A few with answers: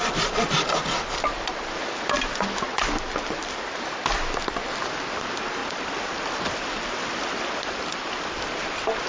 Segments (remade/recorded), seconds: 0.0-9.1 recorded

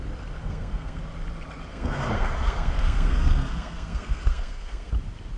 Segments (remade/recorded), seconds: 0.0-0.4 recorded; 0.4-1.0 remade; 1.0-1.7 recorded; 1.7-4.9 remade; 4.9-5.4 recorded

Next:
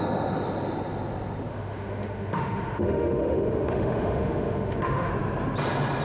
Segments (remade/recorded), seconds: 0.0-1.5 recorded; 1.5-5.1 remade; 5.1-6.0 recorded

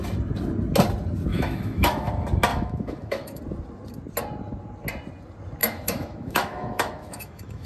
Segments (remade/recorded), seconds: 0.0-1.3 recorded; 1.3-2.1 remade; 2.1-2.5 recorded; 2.5-3.4 remade; 3.4-5.6 recorded; 5.6-7.7 remade